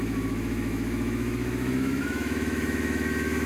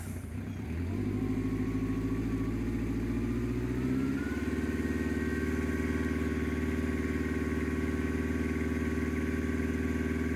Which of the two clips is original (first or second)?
second